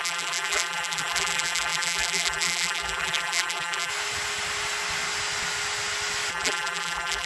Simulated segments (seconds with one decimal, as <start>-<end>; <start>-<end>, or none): 0.0-3.9; 6.3-7.3